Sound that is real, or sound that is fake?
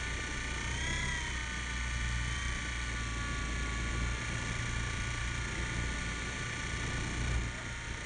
real